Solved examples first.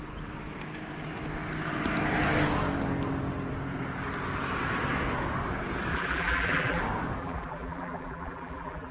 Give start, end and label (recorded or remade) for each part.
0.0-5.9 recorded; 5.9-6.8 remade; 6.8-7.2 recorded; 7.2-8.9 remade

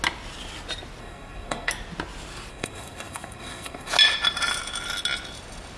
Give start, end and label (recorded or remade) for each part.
0.0-1.0 recorded; 1.0-1.7 remade; 1.7-2.5 recorded; 2.5-3.9 remade; 3.9-5.8 recorded

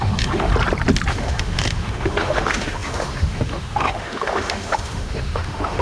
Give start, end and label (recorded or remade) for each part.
0.0-0.5 remade; 0.5-1.1 recorded; 1.1-5.8 remade

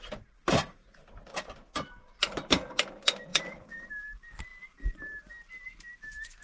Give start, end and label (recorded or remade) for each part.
0.0-3.3 recorded; 3.3-3.9 remade; 3.9-6.4 recorded